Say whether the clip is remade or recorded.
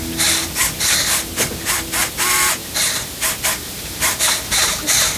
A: recorded